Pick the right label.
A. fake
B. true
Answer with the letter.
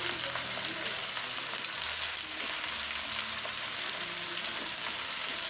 B